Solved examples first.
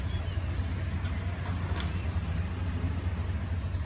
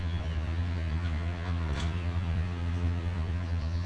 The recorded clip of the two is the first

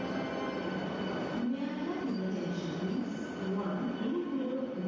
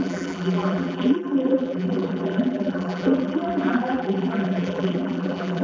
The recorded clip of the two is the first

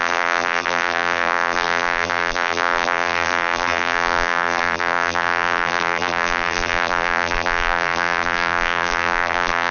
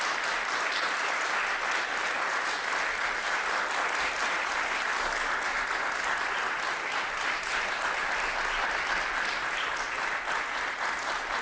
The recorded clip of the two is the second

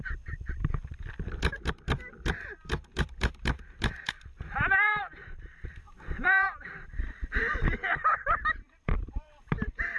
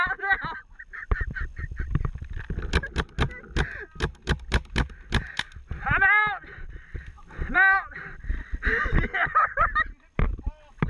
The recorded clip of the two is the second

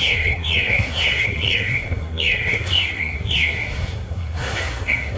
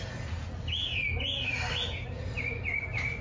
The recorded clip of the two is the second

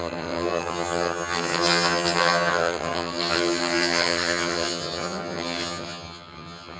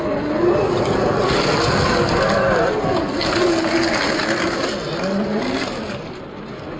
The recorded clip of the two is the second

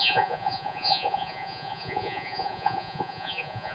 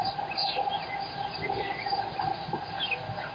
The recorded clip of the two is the second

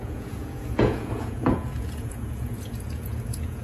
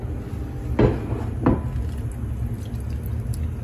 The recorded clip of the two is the second